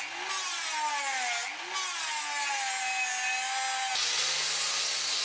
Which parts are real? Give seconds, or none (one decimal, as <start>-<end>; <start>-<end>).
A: 0.0-5.2